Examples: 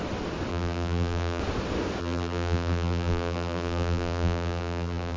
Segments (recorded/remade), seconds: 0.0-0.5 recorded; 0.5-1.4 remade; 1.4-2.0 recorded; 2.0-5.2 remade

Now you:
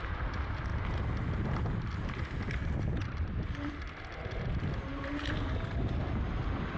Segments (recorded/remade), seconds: 0.0-6.8 recorded

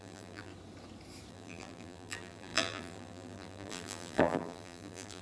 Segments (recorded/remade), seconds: 0.0-0.5 remade; 0.5-1.3 recorded; 1.3-5.2 remade

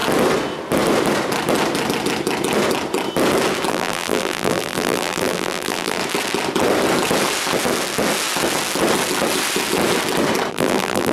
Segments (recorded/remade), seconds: 0.0-3.7 recorded; 3.7-6.0 remade; 6.0-10.5 recorded; 10.5-11.1 remade

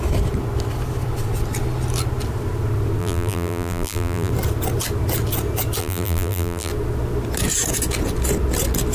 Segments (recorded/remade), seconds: 0.0-3.0 recorded; 3.0-4.3 remade; 4.3-5.8 recorded; 5.8-6.7 remade; 6.7-8.9 recorded

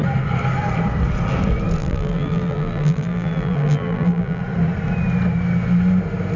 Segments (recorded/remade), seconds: 0.0-1.8 recorded; 1.8-4.4 remade; 4.4-6.4 recorded